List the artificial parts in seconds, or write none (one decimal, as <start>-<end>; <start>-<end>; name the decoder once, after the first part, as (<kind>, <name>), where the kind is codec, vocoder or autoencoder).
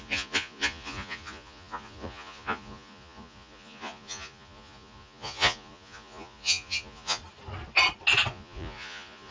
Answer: 0.0-7.2 (vocoder, Vocos); 8.3-9.3